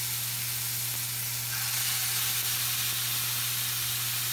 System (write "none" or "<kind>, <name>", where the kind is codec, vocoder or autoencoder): none